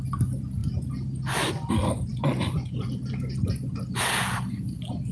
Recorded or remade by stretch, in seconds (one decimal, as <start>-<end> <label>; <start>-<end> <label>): 0.0-5.1 recorded